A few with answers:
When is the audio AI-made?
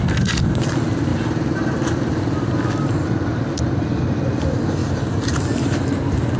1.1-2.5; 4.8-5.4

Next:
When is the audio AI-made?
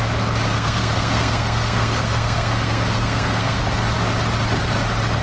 0.5-3.6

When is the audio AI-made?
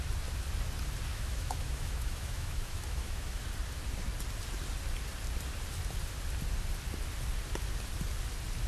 1.1-3.4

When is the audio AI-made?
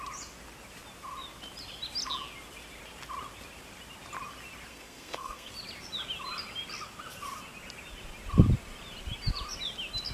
4.7-5.5